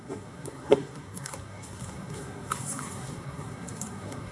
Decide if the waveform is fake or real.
fake